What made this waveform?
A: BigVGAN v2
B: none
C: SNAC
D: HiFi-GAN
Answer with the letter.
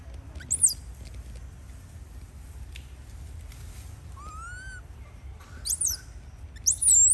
B